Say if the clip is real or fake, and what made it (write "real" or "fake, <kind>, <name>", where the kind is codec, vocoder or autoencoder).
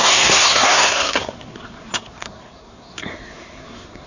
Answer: fake, codec, SNAC